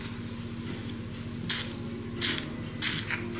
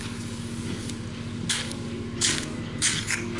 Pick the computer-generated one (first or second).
second